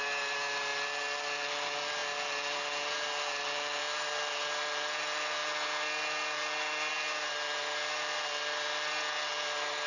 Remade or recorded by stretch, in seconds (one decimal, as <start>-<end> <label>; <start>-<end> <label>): 0.0-9.9 recorded